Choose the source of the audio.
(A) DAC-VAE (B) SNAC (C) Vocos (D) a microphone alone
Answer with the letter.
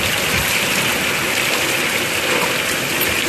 D